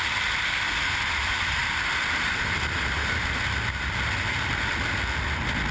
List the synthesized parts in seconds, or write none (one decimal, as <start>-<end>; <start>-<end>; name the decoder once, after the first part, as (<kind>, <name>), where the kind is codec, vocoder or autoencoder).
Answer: none